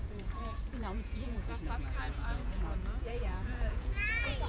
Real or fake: fake